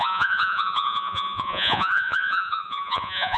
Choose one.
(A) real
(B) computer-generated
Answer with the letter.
B